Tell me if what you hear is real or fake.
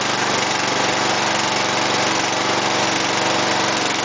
real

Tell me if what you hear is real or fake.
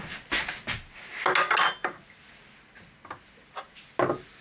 real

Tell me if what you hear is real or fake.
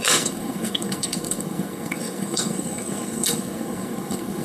fake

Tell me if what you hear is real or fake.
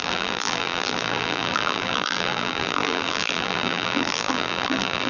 fake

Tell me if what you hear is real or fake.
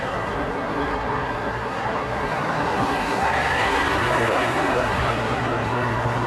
fake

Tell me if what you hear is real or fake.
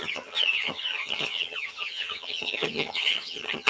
fake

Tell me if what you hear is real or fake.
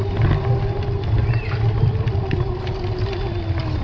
real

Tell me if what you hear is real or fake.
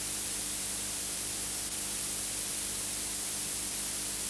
fake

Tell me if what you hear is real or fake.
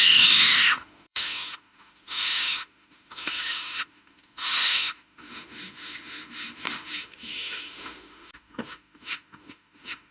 fake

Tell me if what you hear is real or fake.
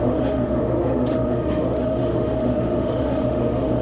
fake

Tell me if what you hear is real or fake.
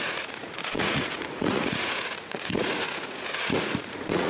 fake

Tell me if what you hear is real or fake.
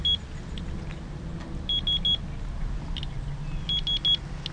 real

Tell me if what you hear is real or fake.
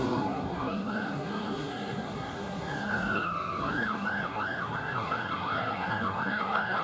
fake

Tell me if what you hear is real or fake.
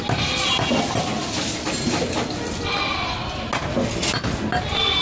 real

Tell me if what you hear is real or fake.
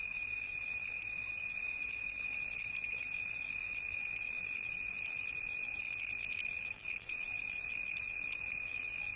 fake